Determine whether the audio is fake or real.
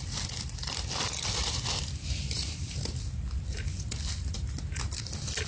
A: real